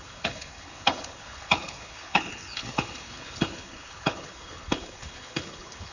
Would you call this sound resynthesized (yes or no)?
yes